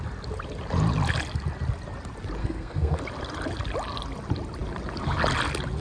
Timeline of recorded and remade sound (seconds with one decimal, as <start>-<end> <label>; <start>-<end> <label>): 0.0-2.4 recorded; 2.4-3.0 remade; 3.0-5.8 recorded